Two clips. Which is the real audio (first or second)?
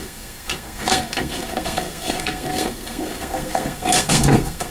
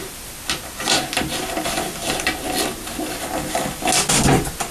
second